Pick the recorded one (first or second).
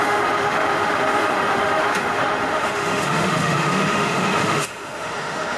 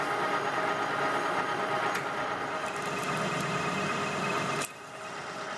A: second